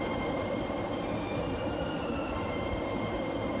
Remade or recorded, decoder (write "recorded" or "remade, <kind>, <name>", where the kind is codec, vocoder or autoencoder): remade, vocoder, BigVGAN v2